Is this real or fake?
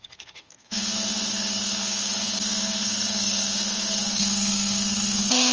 fake